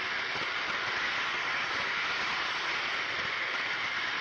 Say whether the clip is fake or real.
real